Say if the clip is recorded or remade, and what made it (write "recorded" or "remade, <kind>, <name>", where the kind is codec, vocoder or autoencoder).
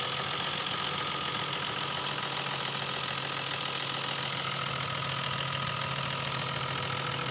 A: recorded